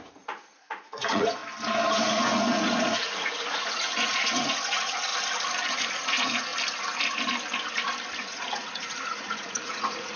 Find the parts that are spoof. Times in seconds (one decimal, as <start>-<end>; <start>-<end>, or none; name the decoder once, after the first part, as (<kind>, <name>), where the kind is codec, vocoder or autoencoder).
0.0-1.4 (vocoder, Vocos); 2.0-5.1; 5.7-6.5; 8.2-10.2